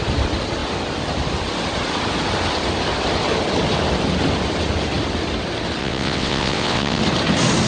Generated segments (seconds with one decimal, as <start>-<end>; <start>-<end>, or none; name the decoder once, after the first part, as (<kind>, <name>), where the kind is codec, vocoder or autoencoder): 5.8-7.0 (vocoder, WaveNeXt)

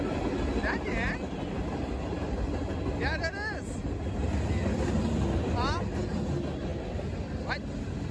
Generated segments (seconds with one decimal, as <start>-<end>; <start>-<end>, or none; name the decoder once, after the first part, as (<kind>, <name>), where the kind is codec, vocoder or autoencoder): none

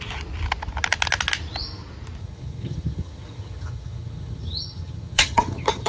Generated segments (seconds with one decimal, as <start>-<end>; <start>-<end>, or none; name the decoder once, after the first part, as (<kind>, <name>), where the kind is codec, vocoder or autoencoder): 2.2-5.9 (vocoder, HiFi-GAN)

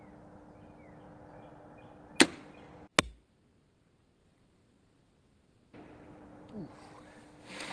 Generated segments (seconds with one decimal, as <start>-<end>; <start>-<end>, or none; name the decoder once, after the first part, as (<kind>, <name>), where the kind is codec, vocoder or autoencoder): 4.2-6.6 (vocoder, BigVGAN v2)

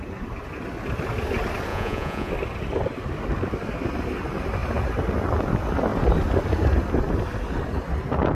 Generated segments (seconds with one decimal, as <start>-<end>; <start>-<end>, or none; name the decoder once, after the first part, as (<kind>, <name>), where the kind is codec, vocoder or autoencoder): 1.7-2.3 (vocoder, Vocos)

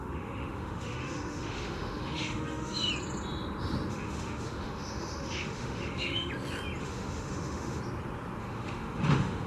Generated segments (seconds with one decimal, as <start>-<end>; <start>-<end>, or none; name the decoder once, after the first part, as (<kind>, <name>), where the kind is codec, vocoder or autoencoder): 0.0-2.9 (autoencoder, DAC-VAE); 3.9-6.3; 6.8-7.8; 8.4-9.5